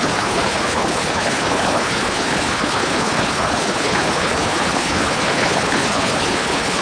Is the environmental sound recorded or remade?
remade